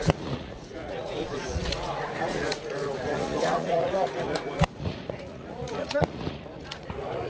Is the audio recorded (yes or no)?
no